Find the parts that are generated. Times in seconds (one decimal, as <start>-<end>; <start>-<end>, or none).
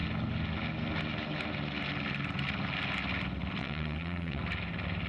3.6-4.4